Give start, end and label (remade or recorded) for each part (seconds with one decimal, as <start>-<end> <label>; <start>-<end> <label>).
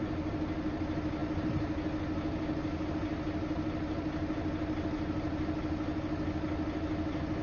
0.0-7.4 recorded